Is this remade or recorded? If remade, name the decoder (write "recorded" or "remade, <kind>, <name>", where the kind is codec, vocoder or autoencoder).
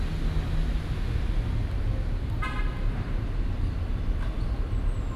recorded